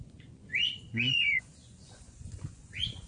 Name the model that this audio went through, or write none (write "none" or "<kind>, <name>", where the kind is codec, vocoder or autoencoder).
vocoder, Vocos